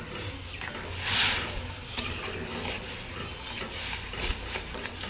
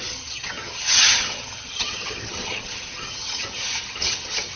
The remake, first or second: second